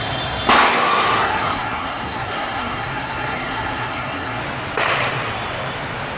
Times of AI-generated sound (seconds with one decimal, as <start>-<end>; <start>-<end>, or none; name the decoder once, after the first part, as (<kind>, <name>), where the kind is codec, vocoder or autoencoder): 0.7-4.4 (codec, SNAC)